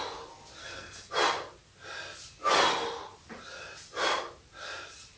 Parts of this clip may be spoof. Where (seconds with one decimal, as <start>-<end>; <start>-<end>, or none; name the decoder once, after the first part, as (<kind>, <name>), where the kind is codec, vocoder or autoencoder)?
0.6-1.1 (codec, SNAC)